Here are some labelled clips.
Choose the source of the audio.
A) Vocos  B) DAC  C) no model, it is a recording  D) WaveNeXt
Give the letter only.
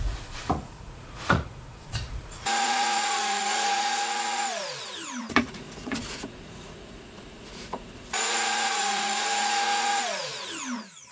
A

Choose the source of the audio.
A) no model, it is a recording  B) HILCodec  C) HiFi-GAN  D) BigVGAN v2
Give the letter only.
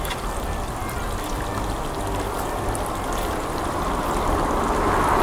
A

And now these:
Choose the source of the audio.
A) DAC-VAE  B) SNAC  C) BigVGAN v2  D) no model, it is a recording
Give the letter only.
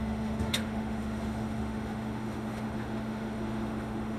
A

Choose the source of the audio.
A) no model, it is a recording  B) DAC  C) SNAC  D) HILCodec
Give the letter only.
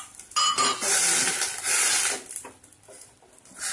A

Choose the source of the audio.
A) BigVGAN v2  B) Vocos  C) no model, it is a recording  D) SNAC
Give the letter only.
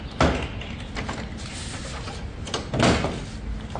C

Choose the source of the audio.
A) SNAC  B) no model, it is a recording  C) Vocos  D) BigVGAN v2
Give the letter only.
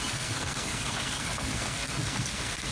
A